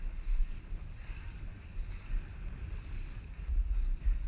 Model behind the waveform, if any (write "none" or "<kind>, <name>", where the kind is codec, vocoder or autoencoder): none